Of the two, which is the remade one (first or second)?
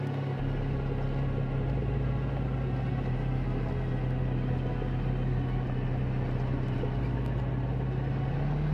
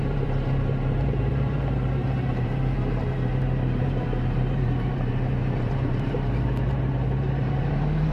second